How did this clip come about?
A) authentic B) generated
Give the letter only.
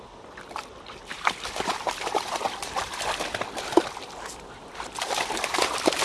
B